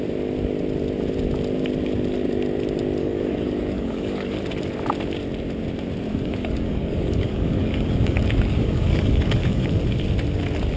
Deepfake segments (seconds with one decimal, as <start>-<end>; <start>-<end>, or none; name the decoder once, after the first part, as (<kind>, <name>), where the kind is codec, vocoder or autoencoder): 3.0-4.4 (codec, DAC); 6.1-9.7